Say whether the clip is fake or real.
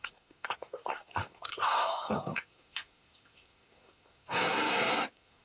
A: fake